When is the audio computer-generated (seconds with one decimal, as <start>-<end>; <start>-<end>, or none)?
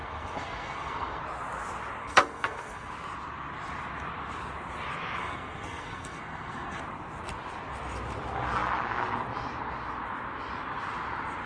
0.0-1.2; 2.0-2.9; 5.2-6.8